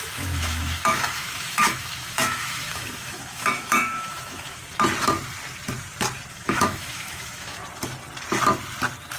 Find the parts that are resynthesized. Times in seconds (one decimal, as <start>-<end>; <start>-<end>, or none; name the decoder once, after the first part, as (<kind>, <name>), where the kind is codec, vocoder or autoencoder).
0.0-4.6 (autoencoder, DAC-VAE); 6.3-7.6